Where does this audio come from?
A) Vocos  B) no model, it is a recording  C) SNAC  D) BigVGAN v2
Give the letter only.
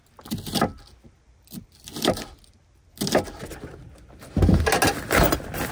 B